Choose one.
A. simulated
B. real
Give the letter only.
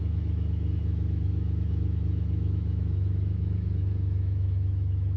A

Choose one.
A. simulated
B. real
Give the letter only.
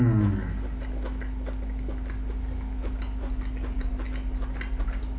B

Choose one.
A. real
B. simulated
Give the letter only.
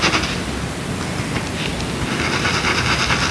A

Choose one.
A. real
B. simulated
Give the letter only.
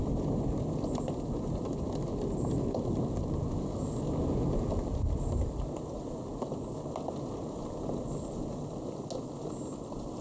A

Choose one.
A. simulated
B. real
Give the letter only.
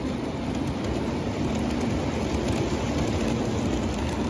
B